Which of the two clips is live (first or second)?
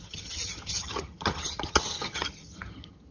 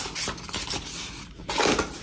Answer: second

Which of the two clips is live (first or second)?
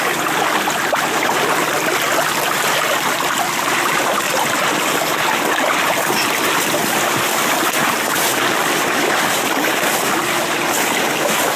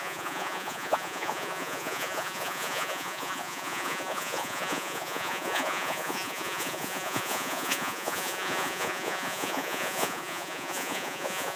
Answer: first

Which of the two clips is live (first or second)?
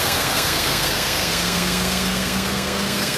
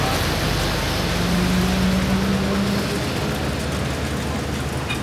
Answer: second